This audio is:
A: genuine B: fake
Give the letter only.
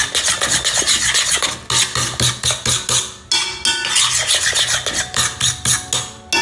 A